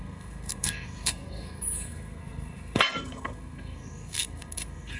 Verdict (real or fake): fake